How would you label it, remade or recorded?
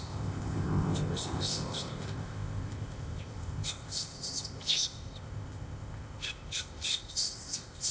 remade